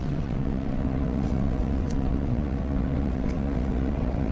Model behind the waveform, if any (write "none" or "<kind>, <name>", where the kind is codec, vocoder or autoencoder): vocoder, WaveNeXt